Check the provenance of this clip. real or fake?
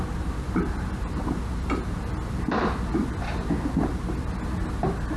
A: real